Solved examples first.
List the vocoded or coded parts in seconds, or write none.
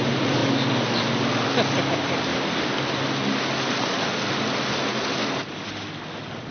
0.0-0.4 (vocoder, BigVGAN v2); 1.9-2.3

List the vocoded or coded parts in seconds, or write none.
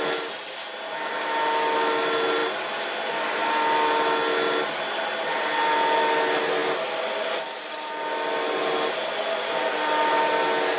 none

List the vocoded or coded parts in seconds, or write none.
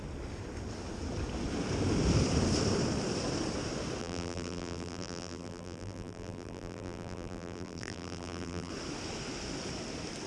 4.0-8.7 (vocoder, BigVGAN v2)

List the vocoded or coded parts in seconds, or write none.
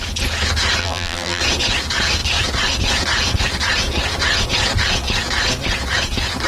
0.8-1.4 (vocoder, BigVGAN v2)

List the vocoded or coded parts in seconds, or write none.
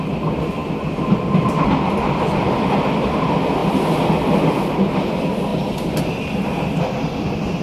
none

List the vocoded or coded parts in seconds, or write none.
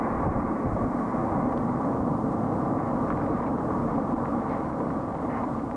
0.0-1.2 (vocoder, BigVGAN v2); 3.1-4.3; 5.2-5.8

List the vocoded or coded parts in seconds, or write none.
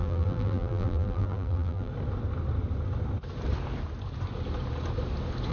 0.0-1.9 (vocoder, BigVGAN v2)